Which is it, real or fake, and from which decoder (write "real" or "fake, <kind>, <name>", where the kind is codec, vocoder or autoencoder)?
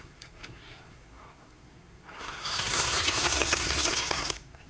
fake, codec, SNAC